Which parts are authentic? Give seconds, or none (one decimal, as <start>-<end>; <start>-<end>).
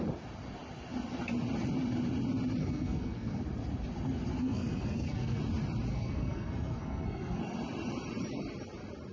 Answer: 0.0-2.6; 3.4-4.4; 5.4-5.9; 7.4-9.1